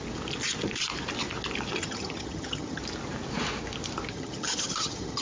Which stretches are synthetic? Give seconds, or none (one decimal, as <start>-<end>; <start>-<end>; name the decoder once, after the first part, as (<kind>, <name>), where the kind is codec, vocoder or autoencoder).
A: 1.7-2.8 (vocoder, HiFi-GAN); 4.1-5.2